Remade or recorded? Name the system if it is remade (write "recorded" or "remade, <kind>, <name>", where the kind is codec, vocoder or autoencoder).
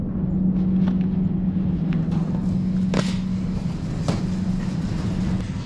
recorded